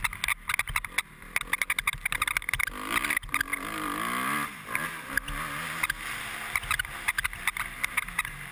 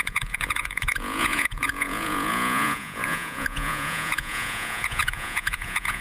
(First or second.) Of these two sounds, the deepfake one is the second